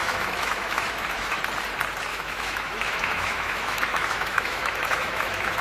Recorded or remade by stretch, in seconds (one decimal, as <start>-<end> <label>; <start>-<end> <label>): 0.0-1.4 remade; 1.4-2.1 recorded; 2.1-5.6 remade